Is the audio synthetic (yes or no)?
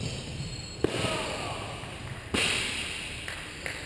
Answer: no